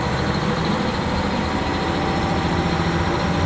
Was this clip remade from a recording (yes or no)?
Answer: yes